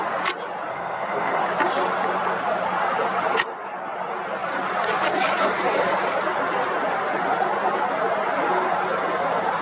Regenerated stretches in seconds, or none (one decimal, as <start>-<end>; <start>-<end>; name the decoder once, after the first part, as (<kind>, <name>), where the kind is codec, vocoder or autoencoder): 0.7-1.4 (codec, SNAC)